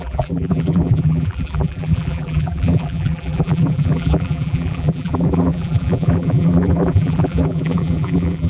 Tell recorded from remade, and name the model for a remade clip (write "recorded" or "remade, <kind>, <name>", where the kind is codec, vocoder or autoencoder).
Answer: remade, vocoder, BigVGAN v2